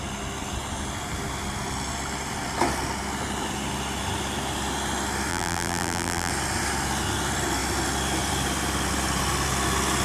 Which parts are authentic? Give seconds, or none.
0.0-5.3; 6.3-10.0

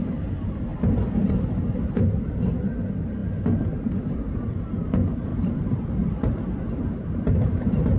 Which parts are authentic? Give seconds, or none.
0.0-0.7; 1.5-5.3

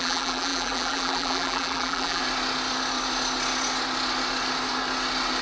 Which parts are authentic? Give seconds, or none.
2.2-5.4

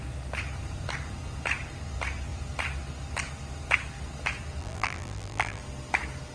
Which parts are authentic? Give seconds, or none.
0.0-4.6; 5.6-6.3

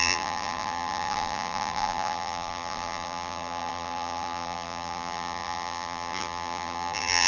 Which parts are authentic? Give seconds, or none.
none

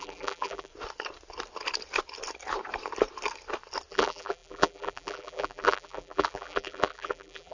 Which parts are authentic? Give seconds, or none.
0.7-3.9